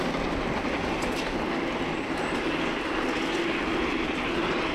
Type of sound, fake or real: real